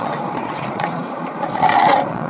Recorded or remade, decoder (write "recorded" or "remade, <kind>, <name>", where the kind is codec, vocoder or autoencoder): remade, vocoder, Vocos